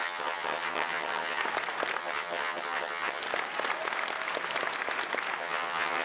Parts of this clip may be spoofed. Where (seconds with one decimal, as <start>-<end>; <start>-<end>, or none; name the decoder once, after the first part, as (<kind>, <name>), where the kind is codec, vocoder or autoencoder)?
0.0-1.4 (vocoder, HiFi-GAN); 2.0-3.2; 5.4-6.0

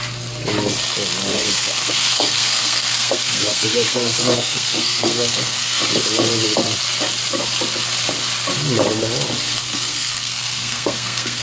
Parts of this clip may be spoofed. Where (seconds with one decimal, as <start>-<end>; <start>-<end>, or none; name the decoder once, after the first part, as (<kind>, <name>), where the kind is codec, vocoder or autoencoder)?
1.3-5.8 (codec, SNAC); 9.7-11.4

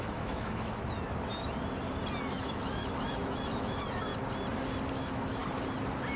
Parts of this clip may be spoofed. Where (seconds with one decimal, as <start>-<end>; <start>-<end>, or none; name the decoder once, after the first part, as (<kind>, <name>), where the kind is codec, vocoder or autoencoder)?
0.0-0.8 (autoencoder, DAC-VAE); 2.3-4.1; 4.9-5.4

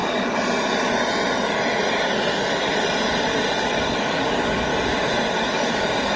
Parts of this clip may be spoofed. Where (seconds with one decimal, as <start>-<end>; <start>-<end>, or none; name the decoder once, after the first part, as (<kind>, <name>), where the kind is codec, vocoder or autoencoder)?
3.7-4.7 (codec, DAC); 5.5-6.2

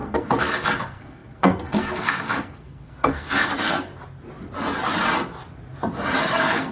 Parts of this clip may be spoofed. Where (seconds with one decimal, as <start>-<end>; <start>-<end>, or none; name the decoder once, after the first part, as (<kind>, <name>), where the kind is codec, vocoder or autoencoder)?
0.0-3.9 (codec, SNAC); 6.2-6.7

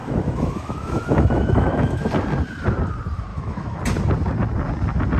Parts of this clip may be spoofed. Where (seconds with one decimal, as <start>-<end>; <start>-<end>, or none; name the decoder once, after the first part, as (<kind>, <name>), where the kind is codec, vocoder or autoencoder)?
0.0-2.1 (autoencoder, DAC-VAE); 3.3-3.8

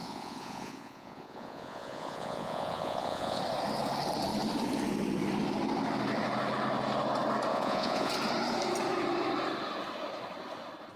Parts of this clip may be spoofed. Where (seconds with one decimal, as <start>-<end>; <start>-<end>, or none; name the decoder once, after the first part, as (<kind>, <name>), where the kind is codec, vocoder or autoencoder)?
0.0-3.4 (vocoder, Vocos); 7.5-8.1